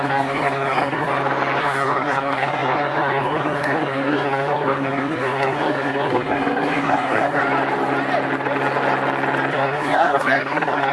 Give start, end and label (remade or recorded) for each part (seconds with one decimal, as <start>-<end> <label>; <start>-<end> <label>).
0.0-1.1 remade; 1.1-1.6 recorded; 1.6-7.4 remade; 7.4-9.5 recorded; 9.5-10.9 remade

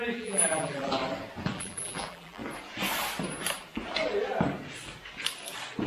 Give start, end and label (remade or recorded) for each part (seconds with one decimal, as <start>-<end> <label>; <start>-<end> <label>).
0.0-1.0 remade; 1.0-1.5 recorded; 1.5-2.4 remade; 2.4-5.9 recorded

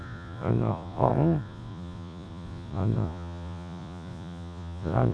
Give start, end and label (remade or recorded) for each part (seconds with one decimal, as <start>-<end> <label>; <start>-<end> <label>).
0.0-5.1 remade

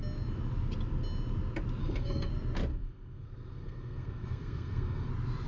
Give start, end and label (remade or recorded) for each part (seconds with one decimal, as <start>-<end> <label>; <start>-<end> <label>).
0.0-1.8 recorded; 1.8-2.3 remade; 2.3-2.7 recorded; 2.7-5.1 remade; 5.1-5.5 recorded

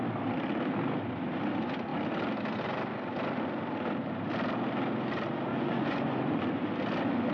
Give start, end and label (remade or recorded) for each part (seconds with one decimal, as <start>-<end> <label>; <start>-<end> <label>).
0.0-5.5 recorded; 5.5-6.4 remade; 6.4-7.3 recorded

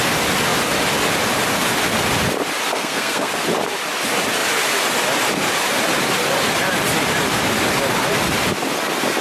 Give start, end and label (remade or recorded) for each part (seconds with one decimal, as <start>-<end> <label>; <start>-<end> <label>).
0.0-2.7 recorded; 2.7-3.3 remade; 3.3-9.2 recorded